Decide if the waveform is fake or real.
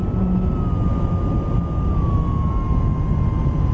real